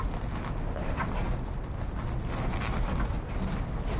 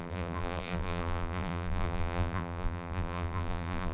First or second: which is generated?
second